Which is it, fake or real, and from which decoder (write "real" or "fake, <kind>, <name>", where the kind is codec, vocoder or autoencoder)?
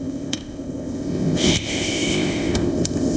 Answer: fake, codec, ZipCodec